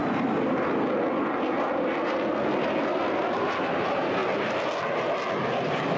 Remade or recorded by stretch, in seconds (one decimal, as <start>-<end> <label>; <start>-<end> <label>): 0.0-6.0 recorded